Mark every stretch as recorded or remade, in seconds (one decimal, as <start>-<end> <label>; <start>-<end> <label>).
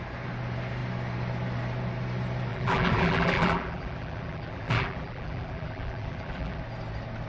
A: 0.0-2.5 recorded; 2.5-6.6 remade; 6.6-7.3 recorded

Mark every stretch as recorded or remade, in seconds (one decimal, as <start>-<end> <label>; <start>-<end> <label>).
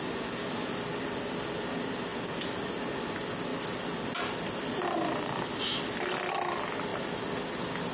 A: 0.0-2.1 recorded; 2.1-2.7 remade; 2.7-7.9 recorded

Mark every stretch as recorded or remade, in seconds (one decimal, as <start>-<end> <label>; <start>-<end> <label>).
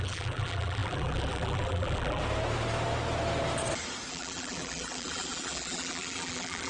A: 0.0-2.2 remade; 2.2-4.1 recorded; 4.1-6.7 remade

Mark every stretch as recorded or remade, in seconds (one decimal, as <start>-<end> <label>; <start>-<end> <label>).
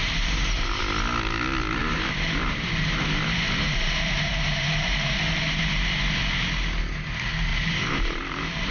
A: 0.0-0.8 remade; 0.8-1.8 recorded; 1.8-5.2 remade; 5.2-7.5 recorded; 7.5-8.7 remade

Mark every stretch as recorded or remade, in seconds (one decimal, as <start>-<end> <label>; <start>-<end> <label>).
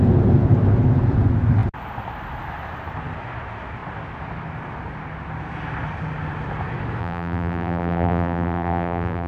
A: 0.0-7.0 recorded; 7.0-9.3 remade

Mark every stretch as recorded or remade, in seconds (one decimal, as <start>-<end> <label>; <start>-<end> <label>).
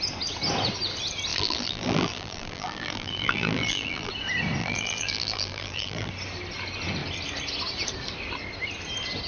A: 0.0-1.3 recorded; 1.3-4.1 remade; 4.1-4.6 recorded; 4.6-6.1 remade; 6.1-9.3 recorded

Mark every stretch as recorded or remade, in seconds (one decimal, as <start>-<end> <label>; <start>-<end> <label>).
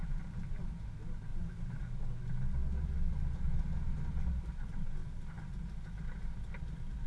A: 0.0-0.7 remade; 0.7-1.3 recorded; 1.3-1.8 remade; 1.8-5.0 recorded; 5.0-5.5 remade; 5.5-7.1 recorded